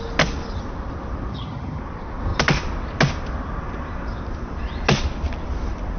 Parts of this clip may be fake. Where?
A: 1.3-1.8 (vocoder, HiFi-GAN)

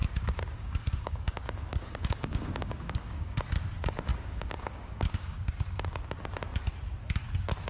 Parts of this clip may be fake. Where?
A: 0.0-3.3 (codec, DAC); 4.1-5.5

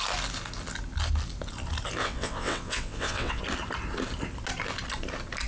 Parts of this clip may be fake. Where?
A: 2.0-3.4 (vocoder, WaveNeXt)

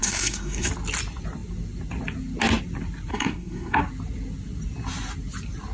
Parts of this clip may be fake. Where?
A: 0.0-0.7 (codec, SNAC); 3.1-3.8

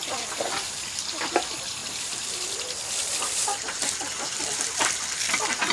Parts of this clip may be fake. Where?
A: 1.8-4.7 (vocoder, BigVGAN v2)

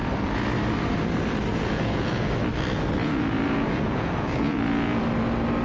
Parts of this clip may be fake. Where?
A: 1.5-2.3 (vocoder, Vocos); 3.0-5.0